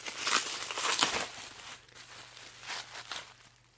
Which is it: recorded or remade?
recorded